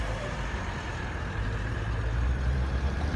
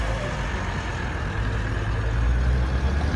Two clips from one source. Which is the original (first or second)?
second